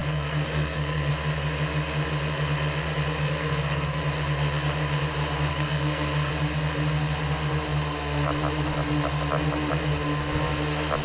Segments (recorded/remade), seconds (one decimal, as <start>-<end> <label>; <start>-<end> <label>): 0.0-1.1 remade; 1.1-3.2 recorded; 3.2-4.0 remade; 4.0-5.5 recorded; 5.5-6.3 remade; 6.3-11.0 recorded